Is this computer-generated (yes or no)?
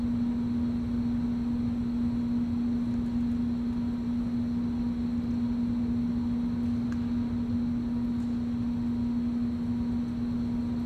no